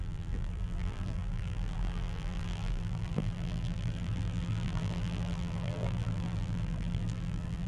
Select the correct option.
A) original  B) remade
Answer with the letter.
B